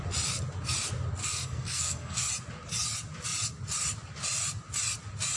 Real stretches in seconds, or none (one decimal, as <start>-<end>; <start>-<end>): 0.0-1.2; 2.3-5.4